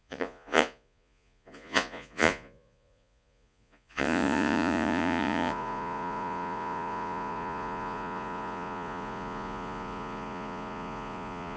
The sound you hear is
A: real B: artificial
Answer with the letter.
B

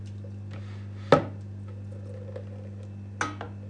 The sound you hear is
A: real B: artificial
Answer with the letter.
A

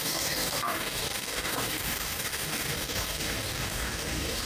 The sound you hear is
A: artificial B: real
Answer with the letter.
A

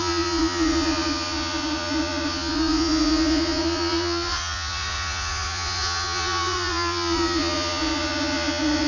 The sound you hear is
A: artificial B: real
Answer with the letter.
A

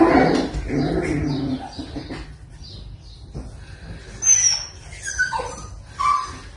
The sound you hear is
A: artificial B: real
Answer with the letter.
B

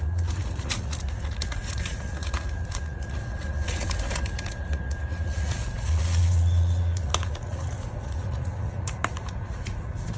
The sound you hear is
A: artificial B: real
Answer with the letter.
A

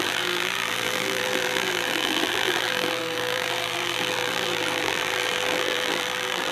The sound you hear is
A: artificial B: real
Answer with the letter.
A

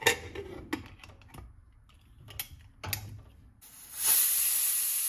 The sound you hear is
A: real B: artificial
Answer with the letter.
A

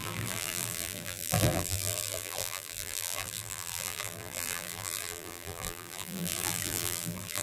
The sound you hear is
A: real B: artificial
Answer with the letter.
B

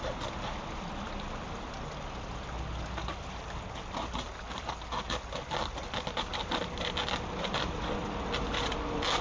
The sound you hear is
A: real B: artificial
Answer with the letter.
A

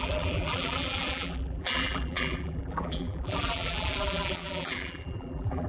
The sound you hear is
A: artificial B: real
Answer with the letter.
A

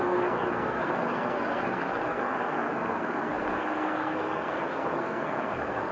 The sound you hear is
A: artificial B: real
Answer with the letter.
A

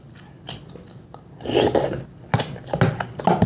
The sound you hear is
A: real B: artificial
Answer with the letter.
A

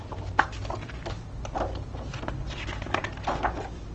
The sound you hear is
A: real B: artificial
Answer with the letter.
A